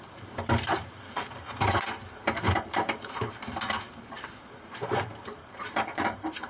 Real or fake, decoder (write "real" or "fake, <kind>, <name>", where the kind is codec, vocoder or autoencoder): fake, vocoder, BigVGAN v2